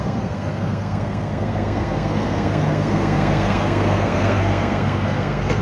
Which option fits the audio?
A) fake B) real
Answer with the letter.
A